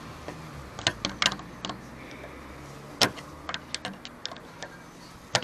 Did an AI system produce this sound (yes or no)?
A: no